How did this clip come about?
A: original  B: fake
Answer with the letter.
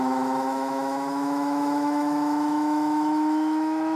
B